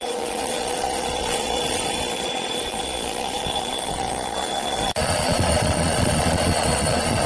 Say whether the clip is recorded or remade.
remade